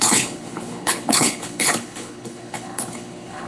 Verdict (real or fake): fake